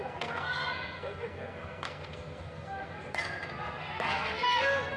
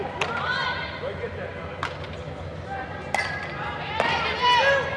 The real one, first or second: second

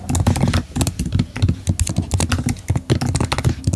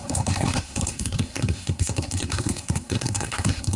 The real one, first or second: first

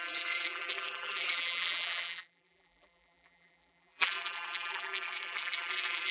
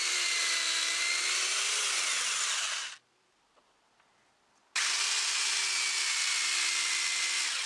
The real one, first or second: second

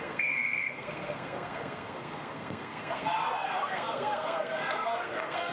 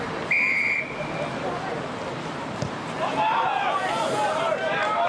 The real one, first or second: second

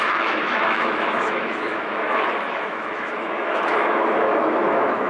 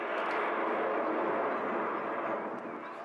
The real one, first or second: second